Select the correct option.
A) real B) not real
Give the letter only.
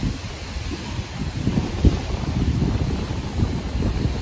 B